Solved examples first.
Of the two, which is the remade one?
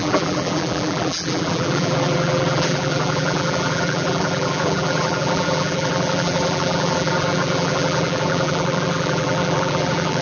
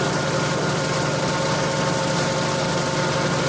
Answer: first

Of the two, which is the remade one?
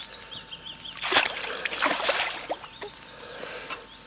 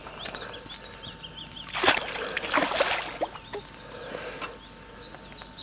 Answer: first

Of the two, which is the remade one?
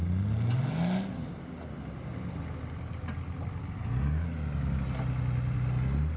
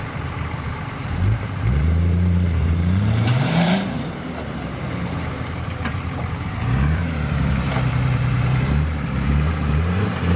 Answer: second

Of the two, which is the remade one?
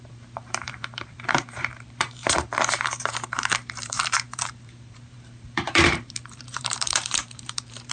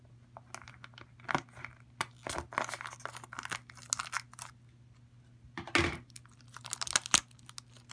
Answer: first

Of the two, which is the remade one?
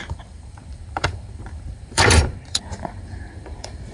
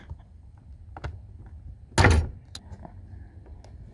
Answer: first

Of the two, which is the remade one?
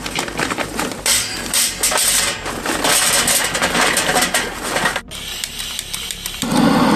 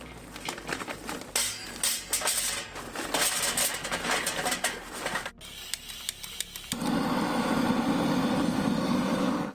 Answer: first